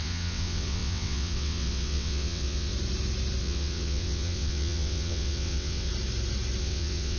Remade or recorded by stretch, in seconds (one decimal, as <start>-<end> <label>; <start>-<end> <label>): 0.0-2.7 remade; 2.7-3.4 recorded; 3.4-5.9 remade; 5.9-6.6 recorded; 6.6-7.2 remade